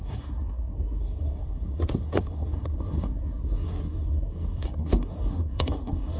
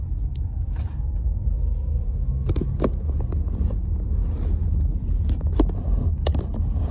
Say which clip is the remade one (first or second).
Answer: first